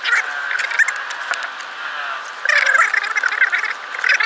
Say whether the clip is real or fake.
real